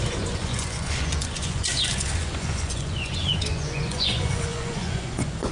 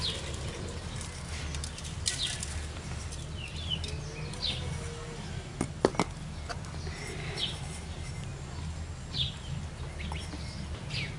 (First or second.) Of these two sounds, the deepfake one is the first